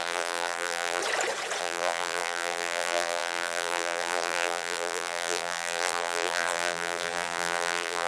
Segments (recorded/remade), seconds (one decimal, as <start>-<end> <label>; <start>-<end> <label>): 0.0-1.0 remade; 1.0-1.6 recorded; 1.6-8.1 remade